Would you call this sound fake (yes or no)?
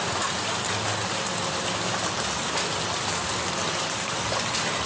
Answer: no